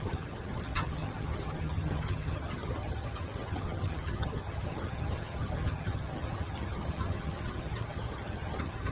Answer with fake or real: fake